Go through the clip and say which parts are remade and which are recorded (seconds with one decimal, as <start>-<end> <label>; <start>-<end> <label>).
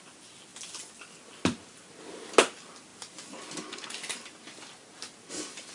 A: 0.0-5.7 recorded